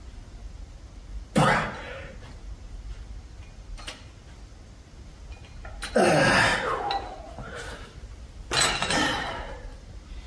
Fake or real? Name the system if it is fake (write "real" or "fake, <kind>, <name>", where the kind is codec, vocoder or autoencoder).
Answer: real